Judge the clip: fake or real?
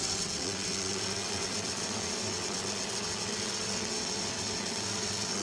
fake